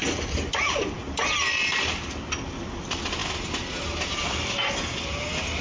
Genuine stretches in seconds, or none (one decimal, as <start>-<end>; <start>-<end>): 0.0-5.6